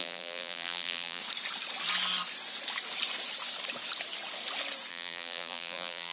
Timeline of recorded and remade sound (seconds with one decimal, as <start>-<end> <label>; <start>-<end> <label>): 0.0-1.2 remade; 1.2-4.9 recorded; 4.9-6.1 remade